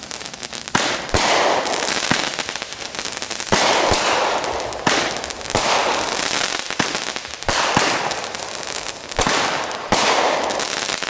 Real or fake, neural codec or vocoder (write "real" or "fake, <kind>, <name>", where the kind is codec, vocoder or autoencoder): real